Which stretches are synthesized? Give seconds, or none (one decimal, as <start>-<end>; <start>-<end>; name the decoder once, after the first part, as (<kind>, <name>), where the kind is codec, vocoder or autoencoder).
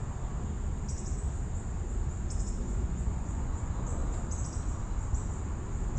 2.6-4.0 (vocoder, Vocos)